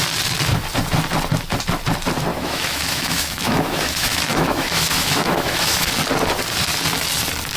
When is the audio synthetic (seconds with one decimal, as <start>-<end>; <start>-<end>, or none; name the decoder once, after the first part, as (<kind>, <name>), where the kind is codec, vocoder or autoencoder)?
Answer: 2.3-5.9 (autoencoder, DAC-VAE)